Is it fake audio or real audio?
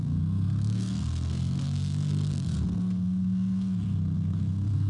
fake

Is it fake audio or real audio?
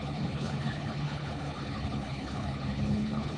fake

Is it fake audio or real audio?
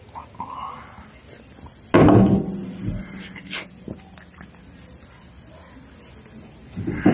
real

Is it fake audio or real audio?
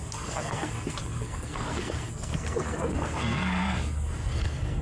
fake